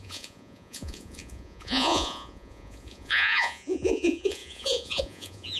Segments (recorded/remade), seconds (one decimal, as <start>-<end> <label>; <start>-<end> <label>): 0.0-5.6 remade

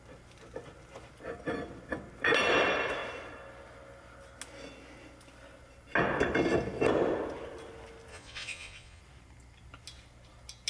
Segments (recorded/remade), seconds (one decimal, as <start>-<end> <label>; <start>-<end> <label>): 0.0-8.1 recorded; 8.1-9.0 remade; 9.0-10.7 recorded